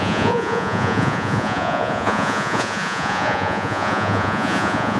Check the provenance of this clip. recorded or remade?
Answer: remade